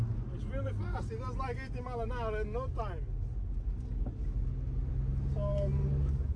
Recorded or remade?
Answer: recorded